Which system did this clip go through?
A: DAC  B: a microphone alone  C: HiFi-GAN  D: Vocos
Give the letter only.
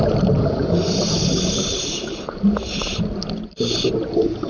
B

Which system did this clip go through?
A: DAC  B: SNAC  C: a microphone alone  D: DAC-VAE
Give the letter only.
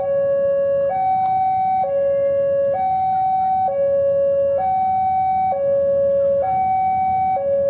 C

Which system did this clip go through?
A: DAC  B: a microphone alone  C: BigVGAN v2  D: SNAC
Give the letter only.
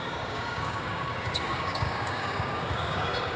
A